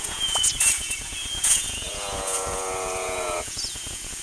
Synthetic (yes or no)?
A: yes